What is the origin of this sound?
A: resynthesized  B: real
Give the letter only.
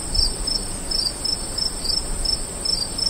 B